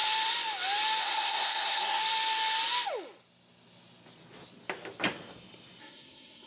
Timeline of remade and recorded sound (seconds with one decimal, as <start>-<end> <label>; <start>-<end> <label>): 0.0-1.0 recorded; 1.0-2.0 remade; 2.0-5.8 recorded; 5.8-6.5 remade

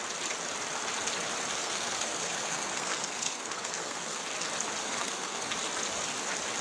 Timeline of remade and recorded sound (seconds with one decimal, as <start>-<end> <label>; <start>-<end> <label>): 0.0-1.6 recorded; 1.6-4.2 remade; 4.2-4.8 recorded; 4.8-5.5 remade; 5.5-6.6 recorded

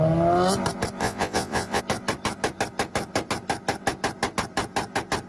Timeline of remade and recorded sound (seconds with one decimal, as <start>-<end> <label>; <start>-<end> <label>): 0.0-1.0 recorded; 1.0-1.8 remade; 1.8-5.3 recorded

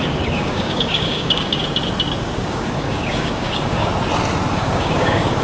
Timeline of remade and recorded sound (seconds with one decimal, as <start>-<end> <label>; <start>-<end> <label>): 0.0-1.6 remade; 1.6-2.2 recorded; 2.2-3.9 remade; 3.9-4.5 recorded; 4.5-5.4 remade

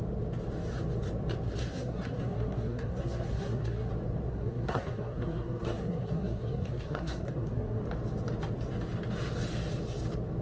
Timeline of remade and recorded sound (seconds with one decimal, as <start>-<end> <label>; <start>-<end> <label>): 0.0-1.6 recorded; 1.6-3.9 remade; 3.9-4.3 recorded; 4.3-7.8 remade; 7.8-10.4 recorded

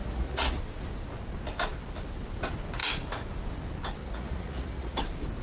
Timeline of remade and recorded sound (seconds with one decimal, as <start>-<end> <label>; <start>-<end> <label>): 0.0-0.6 remade; 0.6-4.0 recorded; 4.0-5.0 remade; 5.0-5.4 recorded

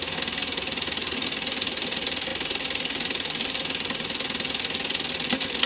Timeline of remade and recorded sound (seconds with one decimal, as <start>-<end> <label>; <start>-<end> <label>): 0.0-5.7 recorded

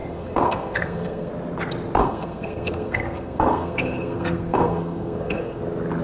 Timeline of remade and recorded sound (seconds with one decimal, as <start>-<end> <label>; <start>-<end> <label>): 0.0-1.3 remade; 1.3-2.0 recorded; 2.0-5.6 remade; 5.6-6.0 recorded